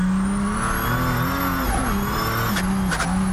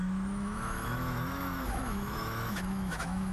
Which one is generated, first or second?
second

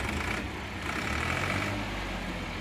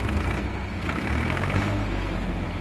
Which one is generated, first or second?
second